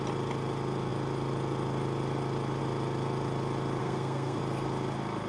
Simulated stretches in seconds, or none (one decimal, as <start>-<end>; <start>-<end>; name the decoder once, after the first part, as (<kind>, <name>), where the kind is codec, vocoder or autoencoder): 3.8-4.4 (codec, SNAC)